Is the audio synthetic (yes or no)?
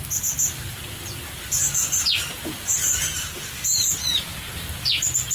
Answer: no